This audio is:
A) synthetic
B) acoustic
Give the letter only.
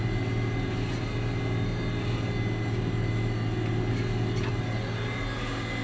B